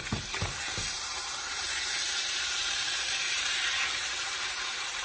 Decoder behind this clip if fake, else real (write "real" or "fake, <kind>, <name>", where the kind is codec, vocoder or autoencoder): fake, vocoder, BigVGAN v2